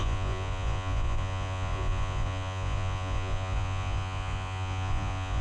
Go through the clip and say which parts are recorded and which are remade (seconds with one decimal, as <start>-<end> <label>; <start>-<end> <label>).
0.0-5.4 remade